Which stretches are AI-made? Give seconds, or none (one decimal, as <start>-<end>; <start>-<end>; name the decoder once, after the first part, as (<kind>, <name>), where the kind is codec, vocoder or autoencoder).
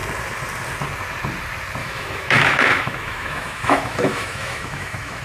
1.8-5.2 (autoencoder, DAC-VAE)